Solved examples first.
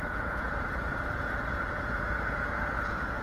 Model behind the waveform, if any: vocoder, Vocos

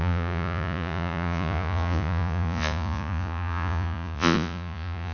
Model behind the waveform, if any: vocoder, Vocos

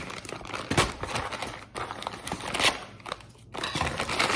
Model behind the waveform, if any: none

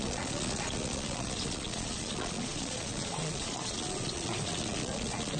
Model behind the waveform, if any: vocoder, Vocos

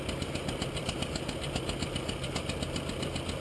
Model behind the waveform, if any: none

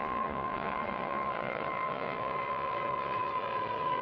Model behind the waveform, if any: vocoder, Vocos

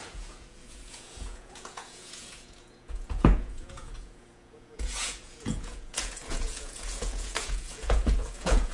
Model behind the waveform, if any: vocoder, Vocos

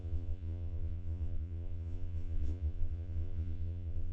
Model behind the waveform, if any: vocoder, Vocos